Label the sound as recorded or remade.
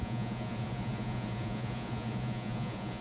remade